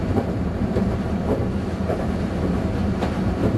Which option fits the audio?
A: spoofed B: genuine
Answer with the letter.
A